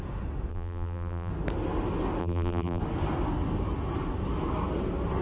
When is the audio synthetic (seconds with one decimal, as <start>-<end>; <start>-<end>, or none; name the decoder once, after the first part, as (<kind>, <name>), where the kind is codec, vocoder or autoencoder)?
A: 0.5-1.3 (vocoder, BigVGAN v2); 2.2-2.8